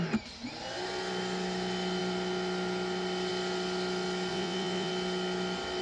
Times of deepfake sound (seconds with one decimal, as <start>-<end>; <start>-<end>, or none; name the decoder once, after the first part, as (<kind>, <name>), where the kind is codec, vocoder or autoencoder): 4.3-4.9 (vocoder, WaveNeXt)